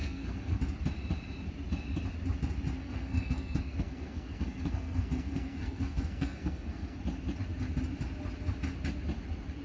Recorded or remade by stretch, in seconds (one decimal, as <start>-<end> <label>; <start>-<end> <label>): 0.0-0.6 remade; 0.6-2.8 recorded; 2.8-7.0 remade; 7.0-9.6 recorded